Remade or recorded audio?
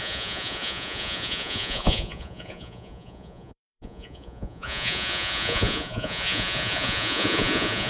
remade